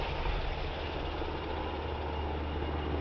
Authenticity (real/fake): real